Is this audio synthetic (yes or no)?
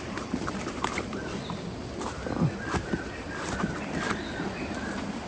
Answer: no